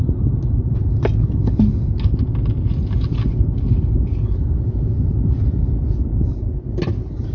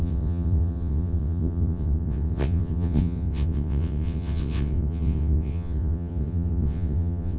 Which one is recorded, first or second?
first